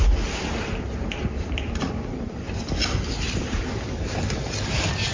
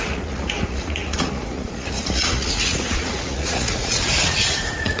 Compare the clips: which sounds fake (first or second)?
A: second